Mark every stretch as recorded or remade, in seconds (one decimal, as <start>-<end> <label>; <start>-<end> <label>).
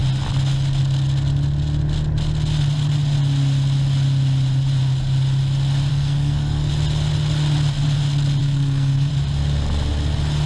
0.0-5.9 recorded; 5.9-6.7 remade; 6.7-8.4 recorded; 8.4-9.1 remade; 9.1-10.5 recorded